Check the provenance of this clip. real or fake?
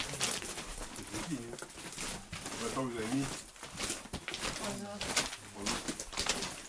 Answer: real